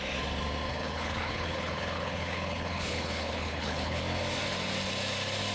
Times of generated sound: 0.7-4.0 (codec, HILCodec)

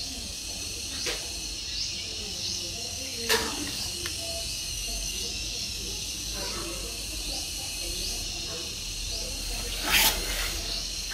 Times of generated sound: 0.0-0.4 (codec, DAC); 2.2-6.8; 9.7-11.1

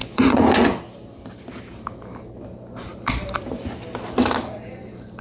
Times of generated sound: 0.0-0.8 (vocoder, Vocos)